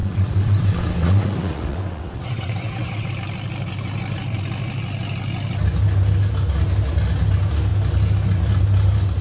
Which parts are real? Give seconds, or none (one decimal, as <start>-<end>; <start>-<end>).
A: 3.1-9.2